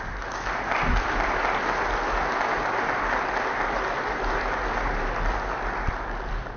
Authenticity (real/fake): real